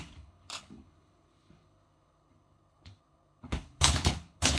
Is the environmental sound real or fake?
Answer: fake